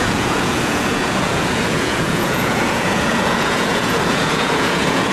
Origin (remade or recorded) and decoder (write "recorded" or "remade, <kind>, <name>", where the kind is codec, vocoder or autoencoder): remade, vocoder, Vocos